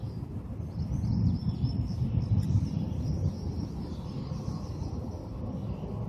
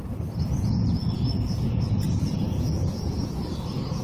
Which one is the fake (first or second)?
second